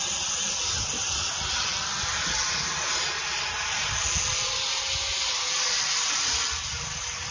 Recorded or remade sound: recorded